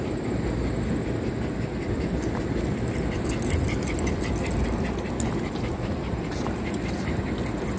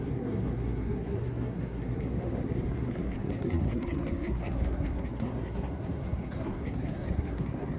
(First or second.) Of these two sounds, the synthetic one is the second